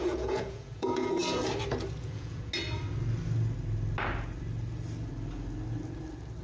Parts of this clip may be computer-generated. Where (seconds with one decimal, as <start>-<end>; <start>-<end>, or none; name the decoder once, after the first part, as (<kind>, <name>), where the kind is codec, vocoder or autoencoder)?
0.0-1.2 (vocoder, Vocos); 2.0-2.5